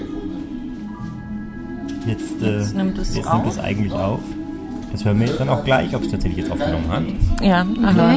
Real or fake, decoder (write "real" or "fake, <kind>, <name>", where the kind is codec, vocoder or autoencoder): real